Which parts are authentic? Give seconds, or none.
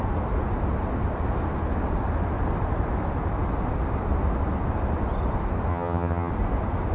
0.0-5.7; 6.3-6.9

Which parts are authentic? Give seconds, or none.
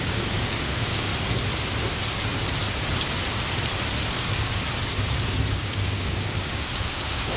1.1-5.5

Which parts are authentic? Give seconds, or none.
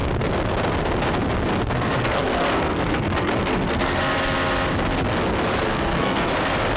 0.0-2.0; 4.0-5.6; 6.3-6.8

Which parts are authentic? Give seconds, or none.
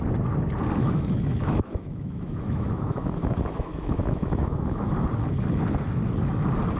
0.0-0.8; 4.9-6.8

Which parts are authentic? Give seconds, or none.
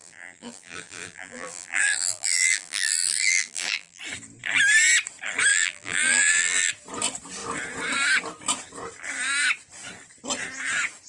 4.0-5.5; 6.7-11.1